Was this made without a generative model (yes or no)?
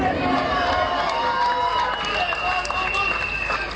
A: yes